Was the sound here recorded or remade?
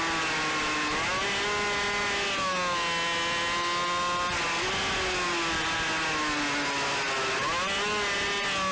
recorded